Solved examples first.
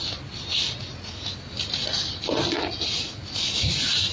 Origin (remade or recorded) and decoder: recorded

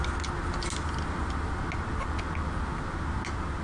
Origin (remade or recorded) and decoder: recorded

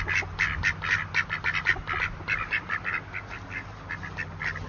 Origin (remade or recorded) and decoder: recorded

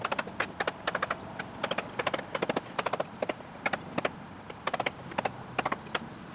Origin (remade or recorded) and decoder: recorded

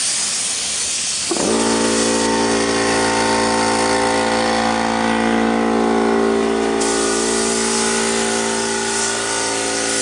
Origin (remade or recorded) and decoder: recorded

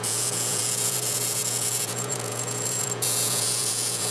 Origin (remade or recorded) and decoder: remade, vocoder, Vocos